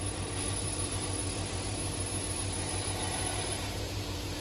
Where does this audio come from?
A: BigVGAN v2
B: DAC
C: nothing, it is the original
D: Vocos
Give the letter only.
A